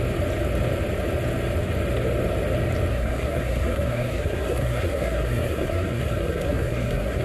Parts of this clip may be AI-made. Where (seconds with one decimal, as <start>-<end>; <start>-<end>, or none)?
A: 2.9-7.2